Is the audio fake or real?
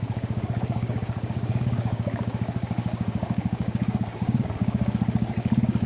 fake